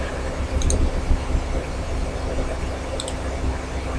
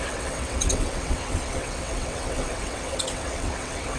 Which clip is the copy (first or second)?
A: second